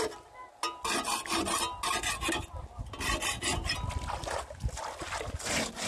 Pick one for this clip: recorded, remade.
recorded